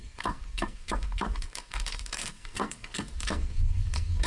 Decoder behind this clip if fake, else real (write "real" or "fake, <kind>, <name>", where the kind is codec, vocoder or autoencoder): fake, codec, SNAC